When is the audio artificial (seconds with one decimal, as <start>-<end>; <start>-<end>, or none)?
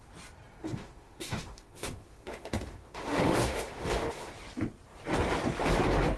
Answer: 0.6-4.3